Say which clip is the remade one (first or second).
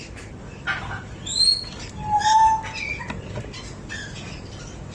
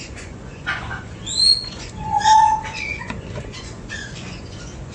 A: second